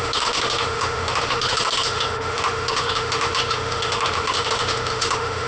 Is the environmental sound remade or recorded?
remade